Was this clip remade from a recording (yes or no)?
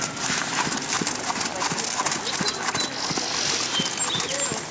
no